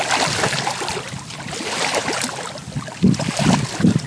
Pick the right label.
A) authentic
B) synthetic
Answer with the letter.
A